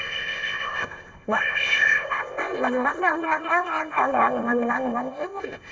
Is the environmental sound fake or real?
fake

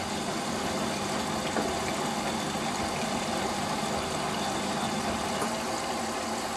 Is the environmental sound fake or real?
real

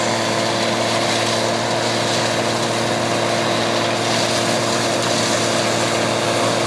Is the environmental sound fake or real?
real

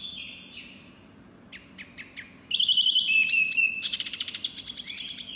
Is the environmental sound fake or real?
real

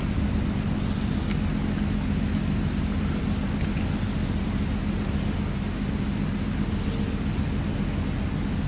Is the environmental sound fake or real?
real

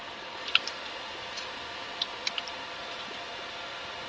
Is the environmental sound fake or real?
real